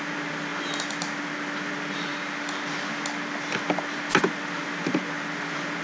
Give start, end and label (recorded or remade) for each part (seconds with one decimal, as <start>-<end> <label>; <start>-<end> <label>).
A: 0.0-5.8 recorded